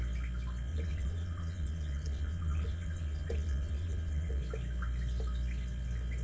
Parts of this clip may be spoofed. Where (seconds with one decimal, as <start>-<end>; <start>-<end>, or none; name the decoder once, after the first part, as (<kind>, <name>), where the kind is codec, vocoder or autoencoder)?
0.7-4.4 (vocoder, Vocos)